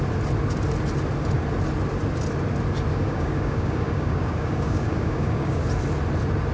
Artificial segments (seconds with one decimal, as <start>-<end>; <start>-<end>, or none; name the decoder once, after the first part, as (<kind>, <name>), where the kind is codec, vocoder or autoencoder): 2.9-5.6 (codec, DAC)